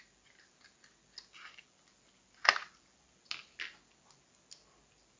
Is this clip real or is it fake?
real